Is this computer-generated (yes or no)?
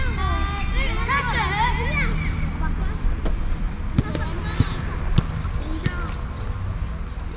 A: no